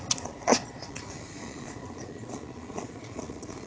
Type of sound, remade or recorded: remade